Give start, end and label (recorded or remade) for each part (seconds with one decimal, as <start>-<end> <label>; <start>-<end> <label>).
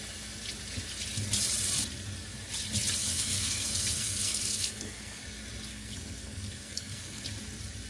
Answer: 0.0-3.0 recorded; 3.0-5.2 remade; 5.2-5.7 recorded; 5.7-7.2 remade; 7.2-7.9 recorded